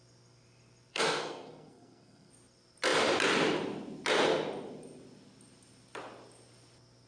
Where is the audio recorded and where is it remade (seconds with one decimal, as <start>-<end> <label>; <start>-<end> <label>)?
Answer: 0.0-0.9 recorded; 0.9-2.3 remade; 2.3-7.1 recorded